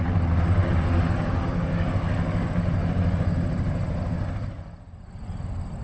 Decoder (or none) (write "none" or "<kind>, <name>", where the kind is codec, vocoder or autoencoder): none